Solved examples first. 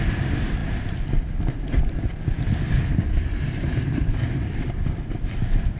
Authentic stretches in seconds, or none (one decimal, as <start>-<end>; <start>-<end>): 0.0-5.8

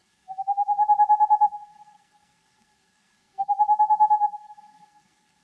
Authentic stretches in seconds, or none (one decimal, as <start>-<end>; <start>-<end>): none

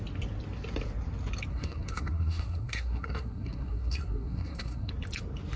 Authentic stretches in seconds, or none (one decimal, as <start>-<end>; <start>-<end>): 0.0-1.5; 4.9-5.6